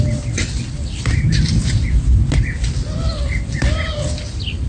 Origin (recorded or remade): recorded